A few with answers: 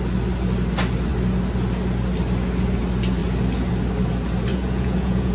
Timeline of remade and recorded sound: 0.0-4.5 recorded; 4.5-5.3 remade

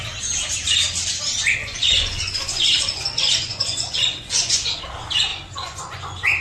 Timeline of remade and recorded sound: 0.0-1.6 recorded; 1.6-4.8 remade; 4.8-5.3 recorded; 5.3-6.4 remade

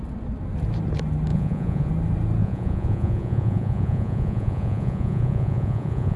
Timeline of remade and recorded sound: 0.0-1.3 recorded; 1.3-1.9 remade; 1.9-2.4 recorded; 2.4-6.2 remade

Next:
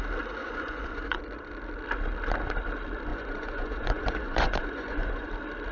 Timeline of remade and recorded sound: 0.0-0.4 recorded; 0.4-1.2 remade; 1.2-3.1 recorded; 3.1-5.3 remade; 5.3-5.7 recorded

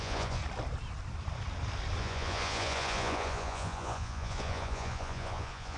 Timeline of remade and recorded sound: 0.0-0.4 remade; 0.4-2.0 recorded; 2.0-5.8 remade

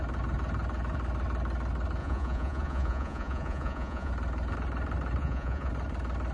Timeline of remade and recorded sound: 0.0-2.0 recorded; 2.0-4.1 remade; 4.1-5.2 recorded; 5.2-5.7 remade; 5.7-6.3 recorded